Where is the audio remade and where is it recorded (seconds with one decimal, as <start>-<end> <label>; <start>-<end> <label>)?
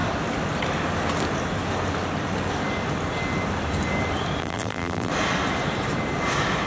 0.0-4.4 recorded; 4.4-5.1 remade; 5.1-6.7 recorded